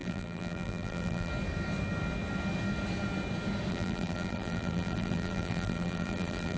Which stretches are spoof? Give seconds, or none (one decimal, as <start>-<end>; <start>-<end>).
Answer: 0.0-1.3; 3.7-6.6